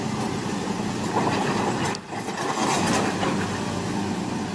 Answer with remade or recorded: recorded